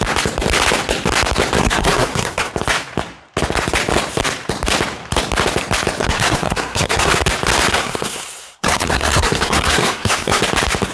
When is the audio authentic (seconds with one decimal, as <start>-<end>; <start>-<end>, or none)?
0.0-1.6; 2.5-6.0; 7.1-7.7; 10.4-10.9